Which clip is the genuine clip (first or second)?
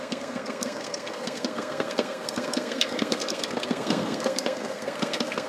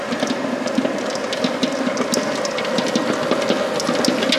second